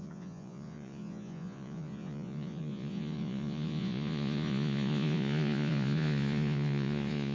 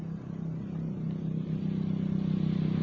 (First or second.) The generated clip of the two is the first